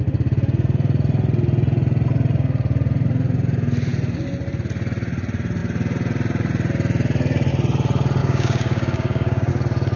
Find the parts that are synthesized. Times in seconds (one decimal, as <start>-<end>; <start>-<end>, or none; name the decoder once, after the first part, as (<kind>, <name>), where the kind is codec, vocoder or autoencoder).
8.2-9.5 (codec, DAC)